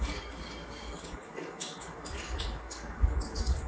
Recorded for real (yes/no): no